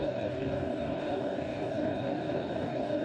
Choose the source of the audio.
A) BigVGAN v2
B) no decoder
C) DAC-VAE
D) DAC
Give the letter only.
D